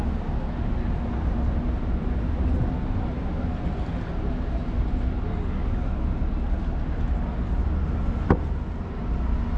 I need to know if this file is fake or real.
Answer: real